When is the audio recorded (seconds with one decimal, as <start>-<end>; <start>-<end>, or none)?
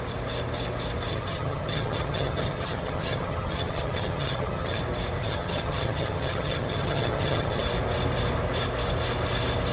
0.0-1.1; 4.8-5.2; 7.6-9.7